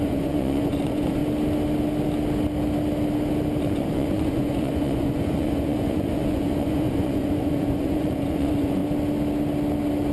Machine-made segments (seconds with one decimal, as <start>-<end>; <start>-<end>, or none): 0.0-1.2; 3.6-8.8